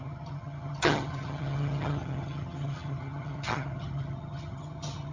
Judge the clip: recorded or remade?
remade